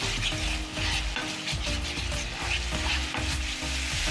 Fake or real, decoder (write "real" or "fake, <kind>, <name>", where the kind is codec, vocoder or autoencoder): real